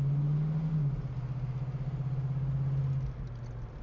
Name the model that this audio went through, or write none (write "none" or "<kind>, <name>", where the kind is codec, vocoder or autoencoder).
none